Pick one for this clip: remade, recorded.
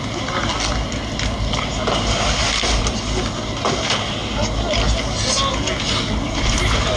recorded